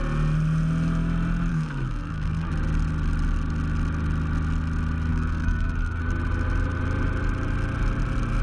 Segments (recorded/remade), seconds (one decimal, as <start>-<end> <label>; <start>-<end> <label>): 0.0-1.5 recorded; 1.5-2.5 remade; 2.5-5.1 recorded; 5.1-6.0 remade; 6.0-8.4 recorded